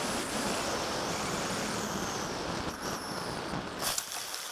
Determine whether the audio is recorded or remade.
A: recorded